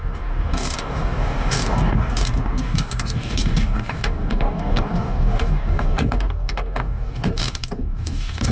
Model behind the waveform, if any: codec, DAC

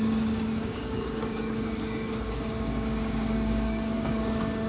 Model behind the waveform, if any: codec, DAC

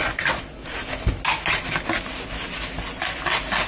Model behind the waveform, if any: none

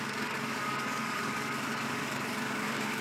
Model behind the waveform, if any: codec, DAC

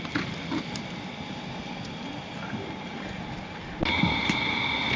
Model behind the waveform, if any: none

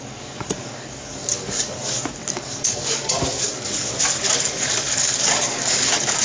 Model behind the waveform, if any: codec, DAC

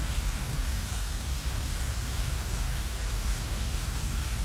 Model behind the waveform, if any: codec, DAC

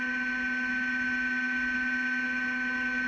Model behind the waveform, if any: none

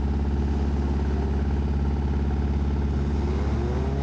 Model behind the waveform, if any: none